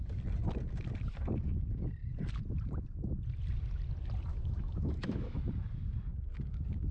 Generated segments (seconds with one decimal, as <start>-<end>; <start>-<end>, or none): 4.3-5.4